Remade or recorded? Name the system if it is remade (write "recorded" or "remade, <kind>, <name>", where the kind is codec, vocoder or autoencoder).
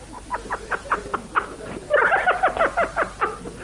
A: recorded